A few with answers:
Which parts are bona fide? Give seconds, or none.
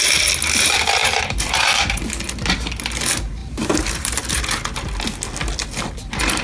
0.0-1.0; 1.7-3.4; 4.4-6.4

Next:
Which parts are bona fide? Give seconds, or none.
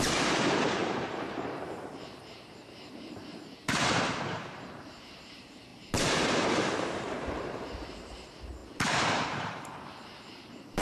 none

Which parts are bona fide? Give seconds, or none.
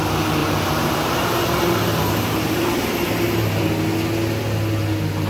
0.0-0.4; 3.6-5.3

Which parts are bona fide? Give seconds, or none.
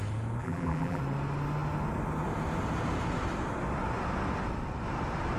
0.0-0.4; 1.0-5.4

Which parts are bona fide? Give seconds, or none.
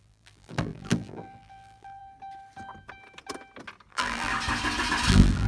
2.0-3.9; 4.3-5.1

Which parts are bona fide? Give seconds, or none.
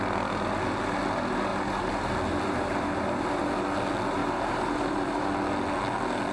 0.0-1.5; 2.1-4.2; 5.2-6.3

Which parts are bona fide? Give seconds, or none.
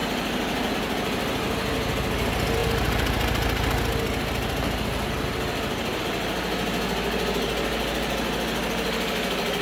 0.0-9.6